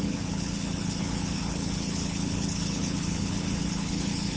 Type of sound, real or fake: fake